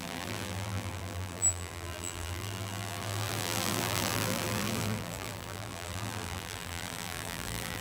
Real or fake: fake